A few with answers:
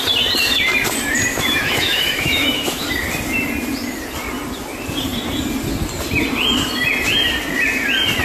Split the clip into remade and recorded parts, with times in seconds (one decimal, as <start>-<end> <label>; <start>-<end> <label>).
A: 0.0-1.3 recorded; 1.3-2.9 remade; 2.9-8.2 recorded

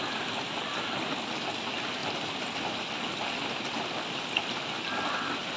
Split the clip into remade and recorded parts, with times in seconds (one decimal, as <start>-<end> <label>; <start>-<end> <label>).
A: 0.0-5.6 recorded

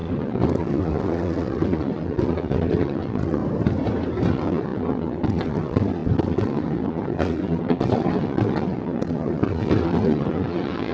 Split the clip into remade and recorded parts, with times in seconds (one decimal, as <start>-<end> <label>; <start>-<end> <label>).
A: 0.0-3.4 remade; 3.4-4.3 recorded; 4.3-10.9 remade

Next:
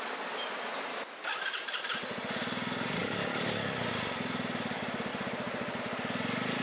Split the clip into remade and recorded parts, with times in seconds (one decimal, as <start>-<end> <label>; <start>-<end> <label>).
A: 0.0-3.0 recorded; 3.0-3.9 remade; 3.9-6.6 recorded